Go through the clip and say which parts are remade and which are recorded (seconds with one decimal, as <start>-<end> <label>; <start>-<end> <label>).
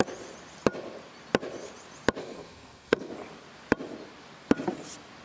0.0-2.2 recorded; 2.2-3.1 remade; 3.1-5.2 recorded